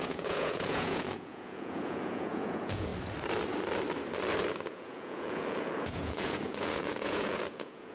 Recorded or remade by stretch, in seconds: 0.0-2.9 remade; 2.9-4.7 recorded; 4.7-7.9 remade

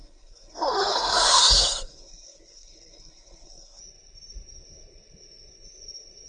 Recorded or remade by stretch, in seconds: 0.0-3.8 remade; 3.8-6.3 recorded

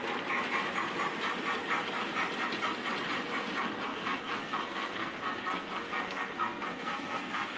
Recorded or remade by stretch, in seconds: 0.0-3.9 recorded; 3.9-7.6 remade

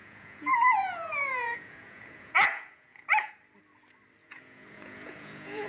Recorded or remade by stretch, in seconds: 0.0-3.3 remade; 3.3-4.2 recorded; 4.2-5.7 remade

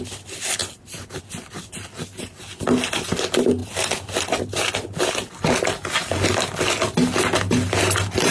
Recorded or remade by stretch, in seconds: 0.0-0.6 recorded; 0.6-1.2 remade; 1.2-8.3 recorded

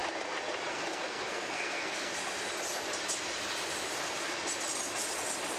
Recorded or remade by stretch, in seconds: 0.0-0.7 recorded; 0.7-2.1 remade; 2.1-5.6 recorded

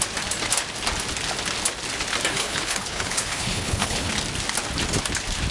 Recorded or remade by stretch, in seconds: 0.0-2.3 recorded; 2.3-4.1 remade; 4.1-5.5 recorded